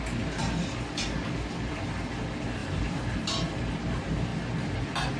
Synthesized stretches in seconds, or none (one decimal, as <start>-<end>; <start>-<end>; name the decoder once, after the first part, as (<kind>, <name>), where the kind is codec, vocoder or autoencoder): 0.4-2.1 (vocoder, BigVGAN v2); 2.6-3.6